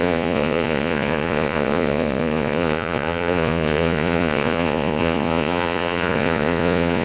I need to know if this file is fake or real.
fake